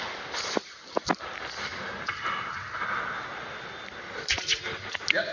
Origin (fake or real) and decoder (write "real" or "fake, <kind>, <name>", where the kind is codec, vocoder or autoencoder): real